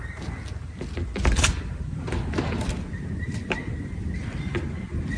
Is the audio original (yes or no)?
yes